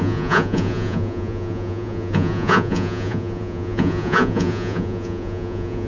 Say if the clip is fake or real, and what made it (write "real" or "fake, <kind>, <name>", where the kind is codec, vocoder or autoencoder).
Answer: fake, vocoder, Vocos